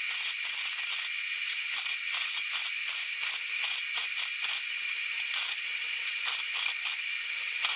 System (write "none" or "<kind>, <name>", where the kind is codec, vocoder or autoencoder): none